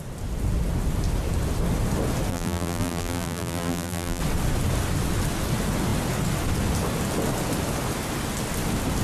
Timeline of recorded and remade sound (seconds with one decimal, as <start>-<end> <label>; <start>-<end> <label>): 0.0-2.3 recorded; 2.3-4.2 remade; 4.2-9.0 recorded